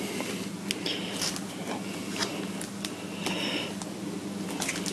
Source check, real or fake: real